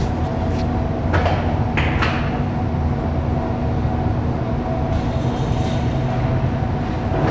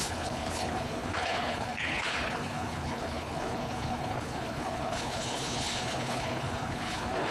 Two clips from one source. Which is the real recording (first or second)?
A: first